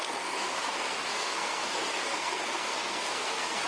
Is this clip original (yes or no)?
no